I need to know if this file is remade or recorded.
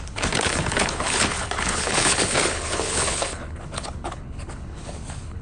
remade